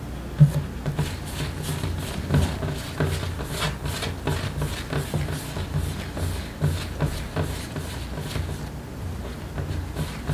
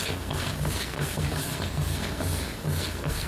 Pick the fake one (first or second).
second